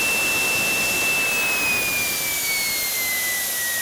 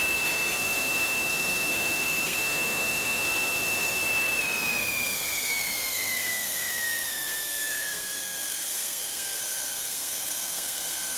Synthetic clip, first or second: second